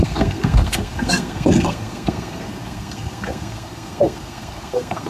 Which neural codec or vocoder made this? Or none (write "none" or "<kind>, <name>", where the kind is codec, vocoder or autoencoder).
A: codec, SNAC